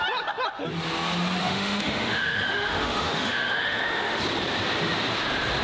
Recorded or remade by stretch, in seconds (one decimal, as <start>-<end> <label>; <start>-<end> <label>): 0.0-1.4 recorded; 1.4-4.2 remade; 4.2-5.6 recorded